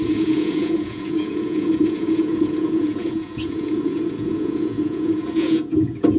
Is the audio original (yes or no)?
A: no